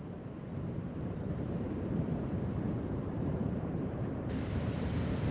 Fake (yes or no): yes